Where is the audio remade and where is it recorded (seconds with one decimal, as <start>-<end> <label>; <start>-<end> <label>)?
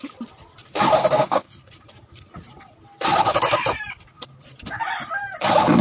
0.0-1.0 recorded; 1.0-1.7 remade; 1.7-5.8 recorded